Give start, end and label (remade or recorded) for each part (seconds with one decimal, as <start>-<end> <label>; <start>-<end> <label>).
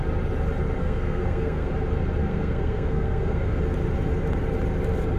0.0-0.8 recorded; 0.8-1.7 remade; 1.7-2.2 recorded; 2.2-3.6 remade; 3.6-5.2 recorded